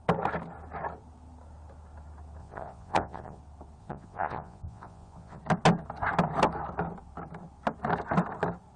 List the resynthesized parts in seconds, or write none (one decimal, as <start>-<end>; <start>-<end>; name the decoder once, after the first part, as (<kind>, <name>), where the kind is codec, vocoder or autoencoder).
2.4-3.4 (vocoder, Vocos); 3.8-5.4